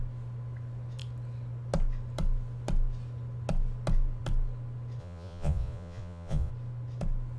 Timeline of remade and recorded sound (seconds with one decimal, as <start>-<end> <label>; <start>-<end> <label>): 0.0-5.0 recorded; 5.0-6.5 remade; 6.5-7.4 recorded